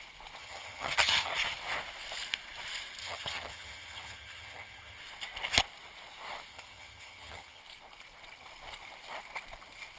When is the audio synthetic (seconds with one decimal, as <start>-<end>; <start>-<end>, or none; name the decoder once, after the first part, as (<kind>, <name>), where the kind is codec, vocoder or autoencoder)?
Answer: 0.4-1.3 (vocoder, HiFi-GAN); 3.0-5.0; 6.5-7.6